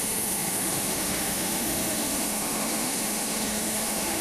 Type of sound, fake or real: fake